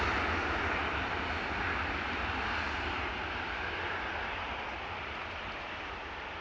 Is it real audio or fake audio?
real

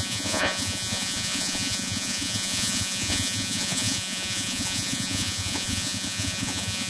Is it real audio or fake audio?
fake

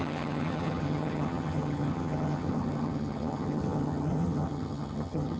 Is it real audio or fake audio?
fake